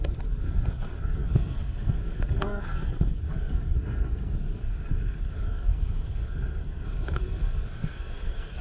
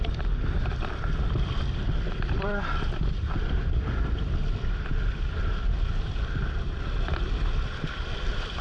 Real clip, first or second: second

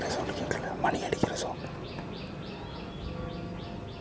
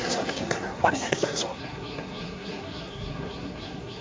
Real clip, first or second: first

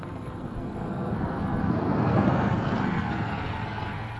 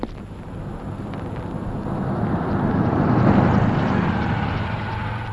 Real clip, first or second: second